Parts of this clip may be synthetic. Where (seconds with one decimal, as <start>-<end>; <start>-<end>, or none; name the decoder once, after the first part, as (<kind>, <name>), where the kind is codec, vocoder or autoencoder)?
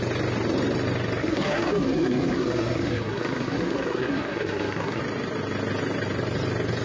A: 1.2-5.0 (codec, SNAC)